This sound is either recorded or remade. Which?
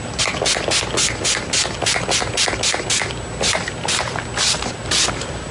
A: recorded